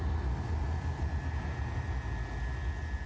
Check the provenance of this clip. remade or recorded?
recorded